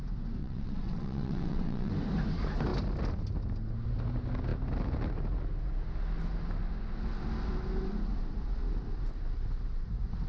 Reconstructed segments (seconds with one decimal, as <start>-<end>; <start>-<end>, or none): 0.4-1.9